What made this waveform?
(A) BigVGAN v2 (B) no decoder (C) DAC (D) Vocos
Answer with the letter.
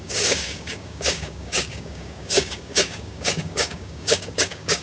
C